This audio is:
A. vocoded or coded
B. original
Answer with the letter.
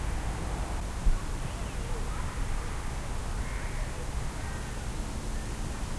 B